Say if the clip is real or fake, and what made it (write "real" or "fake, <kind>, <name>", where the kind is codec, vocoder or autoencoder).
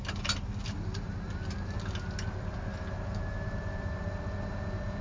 real